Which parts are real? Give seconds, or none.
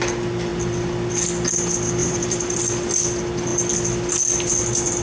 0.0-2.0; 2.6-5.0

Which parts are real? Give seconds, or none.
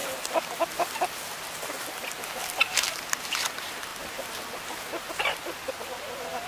0.0-3.1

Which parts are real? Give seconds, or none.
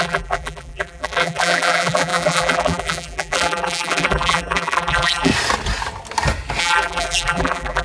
5.3-6.6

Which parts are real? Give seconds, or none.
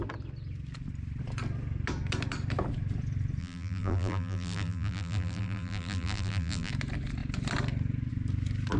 0.0-3.4; 6.7-8.8